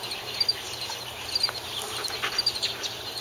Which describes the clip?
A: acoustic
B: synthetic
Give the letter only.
A